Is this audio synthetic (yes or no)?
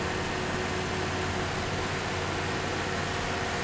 no